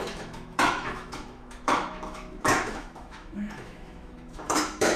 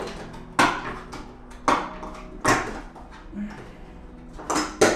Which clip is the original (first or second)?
second